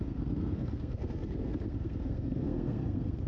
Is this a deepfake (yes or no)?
yes